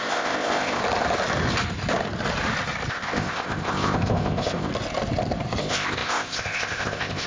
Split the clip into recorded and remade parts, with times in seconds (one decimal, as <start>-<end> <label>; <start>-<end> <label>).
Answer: 0.0-0.8 remade; 0.8-2.9 recorded; 2.9-4.7 remade; 4.7-5.6 recorded; 5.6-7.3 remade